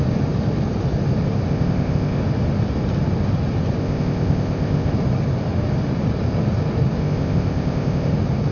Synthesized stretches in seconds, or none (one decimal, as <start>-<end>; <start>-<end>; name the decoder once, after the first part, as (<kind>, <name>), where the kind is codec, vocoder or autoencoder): 1.5-2.2 (codec, ZipCodec); 3.8-4.9; 7.0-8.1